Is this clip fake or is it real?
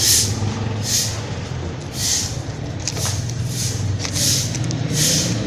real